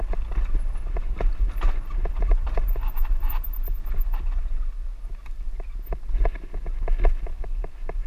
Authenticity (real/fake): real